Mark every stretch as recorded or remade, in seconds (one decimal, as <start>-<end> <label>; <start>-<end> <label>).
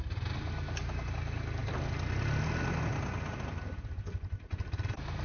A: 0.0-5.2 recorded